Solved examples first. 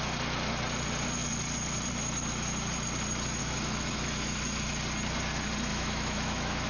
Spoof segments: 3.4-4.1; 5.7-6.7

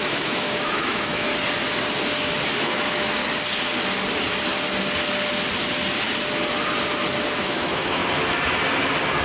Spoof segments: 0.0-1.3; 2.6-3.2; 7.4-8.0

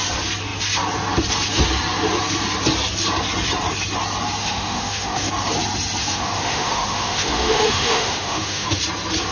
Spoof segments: 4.4-5.3; 6.0-8.8